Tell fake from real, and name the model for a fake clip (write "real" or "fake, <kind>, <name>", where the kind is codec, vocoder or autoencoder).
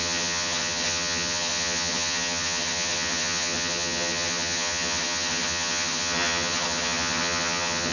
fake, vocoder, HiFi-GAN